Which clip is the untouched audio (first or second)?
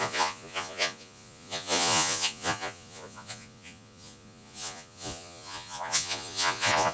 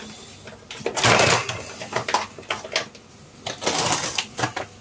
second